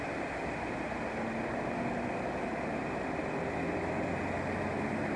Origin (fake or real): real